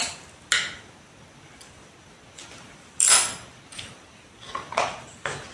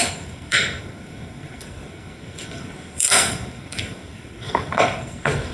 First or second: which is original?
first